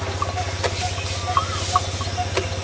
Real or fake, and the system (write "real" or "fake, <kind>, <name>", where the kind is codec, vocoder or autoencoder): real